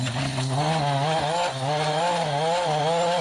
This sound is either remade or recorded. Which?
recorded